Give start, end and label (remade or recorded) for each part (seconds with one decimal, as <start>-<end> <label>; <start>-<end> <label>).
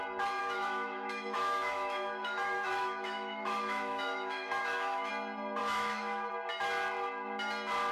0.0-0.4 recorded; 0.4-5.1 remade; 5.1-5.6 recorded; 5.6-6.3 remade; 6.3-7.9 recorded